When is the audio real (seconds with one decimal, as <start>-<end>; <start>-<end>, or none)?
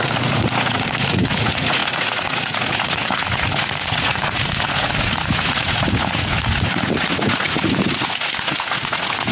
none